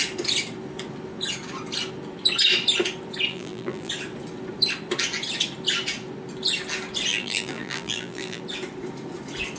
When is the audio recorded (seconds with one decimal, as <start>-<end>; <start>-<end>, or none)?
0.0-3.3; 3.9-7.1; 8.4-9.6